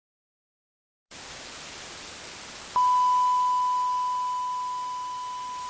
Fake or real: real